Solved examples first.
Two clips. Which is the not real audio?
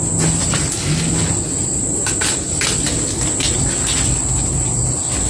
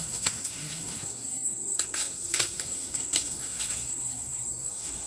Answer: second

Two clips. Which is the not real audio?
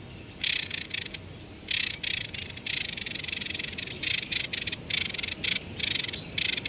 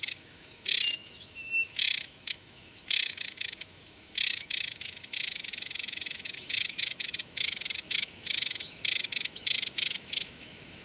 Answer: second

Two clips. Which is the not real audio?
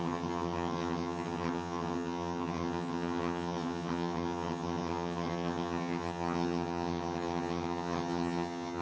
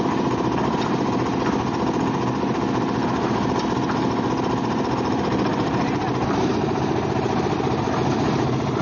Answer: first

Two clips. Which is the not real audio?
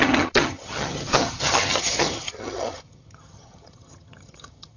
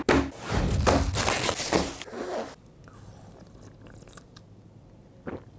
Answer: first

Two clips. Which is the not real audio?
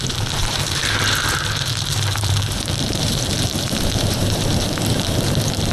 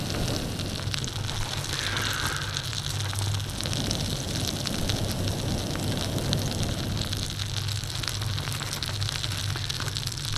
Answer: first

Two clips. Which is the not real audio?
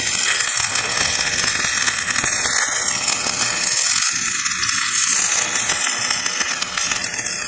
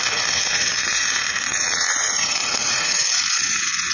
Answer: second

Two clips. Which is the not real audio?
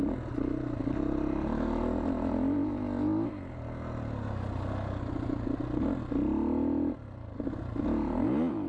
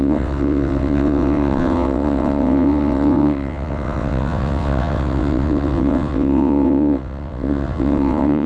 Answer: second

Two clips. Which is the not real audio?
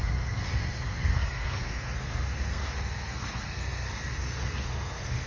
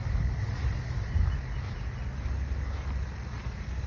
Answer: first